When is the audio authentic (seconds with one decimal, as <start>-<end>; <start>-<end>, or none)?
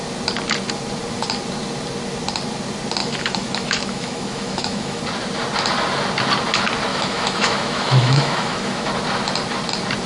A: 0.0-3.0; 5.0-6.9; 8.9-10.1